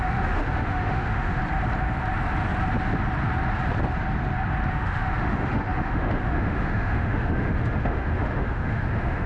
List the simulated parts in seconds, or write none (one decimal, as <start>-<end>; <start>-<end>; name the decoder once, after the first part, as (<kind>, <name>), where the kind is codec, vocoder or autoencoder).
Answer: 0.0-1.4 (autoencoder, DAC-VAE); 4.7-9.3